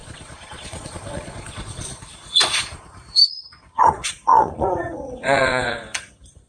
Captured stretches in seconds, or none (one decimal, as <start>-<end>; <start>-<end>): none